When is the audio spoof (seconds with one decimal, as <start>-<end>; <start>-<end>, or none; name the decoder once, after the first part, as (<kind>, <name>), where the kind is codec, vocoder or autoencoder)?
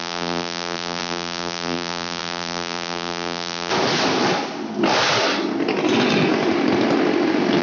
0.0-3.7 (vocoder, BigVGAN v2)